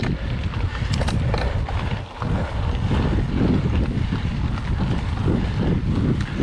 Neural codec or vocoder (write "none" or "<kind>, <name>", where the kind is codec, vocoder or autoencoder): none